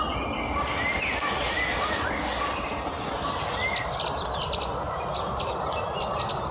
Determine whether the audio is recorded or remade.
recorded